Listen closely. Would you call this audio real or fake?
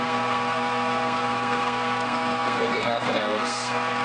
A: fake